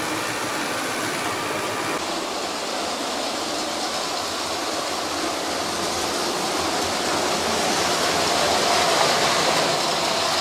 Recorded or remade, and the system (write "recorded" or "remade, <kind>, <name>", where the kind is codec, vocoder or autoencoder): recorded